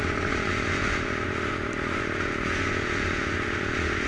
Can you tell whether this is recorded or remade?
remade